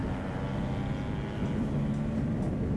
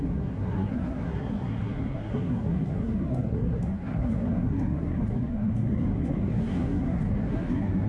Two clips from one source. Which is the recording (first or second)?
first